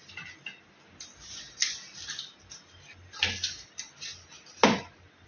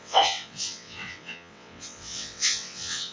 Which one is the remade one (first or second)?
second